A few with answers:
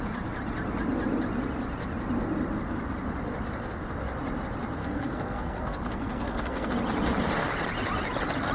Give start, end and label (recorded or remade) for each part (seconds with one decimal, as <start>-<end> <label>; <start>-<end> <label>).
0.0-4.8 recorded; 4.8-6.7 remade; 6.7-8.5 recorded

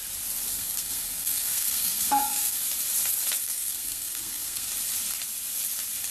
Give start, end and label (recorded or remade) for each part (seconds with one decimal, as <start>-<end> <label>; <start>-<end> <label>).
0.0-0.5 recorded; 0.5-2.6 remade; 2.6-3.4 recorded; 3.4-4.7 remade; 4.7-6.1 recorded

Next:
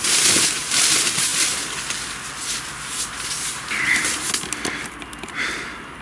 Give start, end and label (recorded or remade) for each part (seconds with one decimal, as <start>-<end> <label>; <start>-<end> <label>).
0.0-6.0 recorded

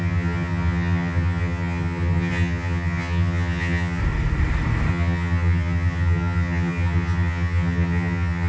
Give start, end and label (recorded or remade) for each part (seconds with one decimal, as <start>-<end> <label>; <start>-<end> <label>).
0.0-4.0 remade; 4.0-4.9 recorded; 4.9-8.5 remade

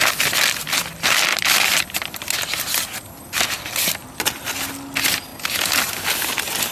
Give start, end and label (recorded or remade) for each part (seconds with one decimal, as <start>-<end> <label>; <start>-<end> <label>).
0.0-6.7 recorded

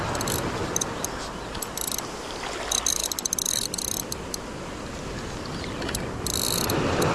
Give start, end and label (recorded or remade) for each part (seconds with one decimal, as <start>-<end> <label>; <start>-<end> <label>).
0.0-7.1 recorded

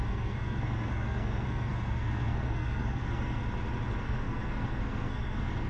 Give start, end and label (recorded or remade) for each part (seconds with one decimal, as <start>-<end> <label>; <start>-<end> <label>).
0.0-3.4 remade; 3.4-4.0 recorded; 4.0-5.7 remade